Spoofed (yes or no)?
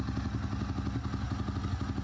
no